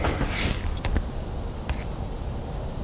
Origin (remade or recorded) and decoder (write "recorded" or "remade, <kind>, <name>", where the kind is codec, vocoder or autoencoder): recorded